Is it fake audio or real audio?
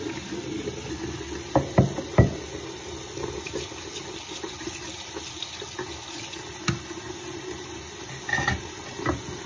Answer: real